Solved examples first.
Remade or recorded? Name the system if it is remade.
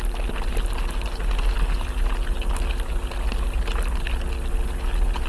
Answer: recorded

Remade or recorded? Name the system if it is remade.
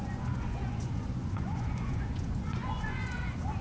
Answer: remade, vocoder, Vocos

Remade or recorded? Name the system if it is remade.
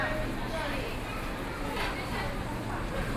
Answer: recorded